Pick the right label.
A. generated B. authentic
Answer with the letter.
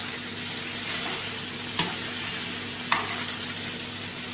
B